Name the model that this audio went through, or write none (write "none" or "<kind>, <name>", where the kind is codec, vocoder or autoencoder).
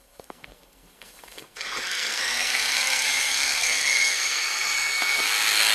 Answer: codec, SNAC